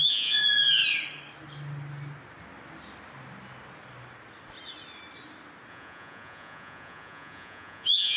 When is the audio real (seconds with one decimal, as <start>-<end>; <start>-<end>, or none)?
0.8-5.7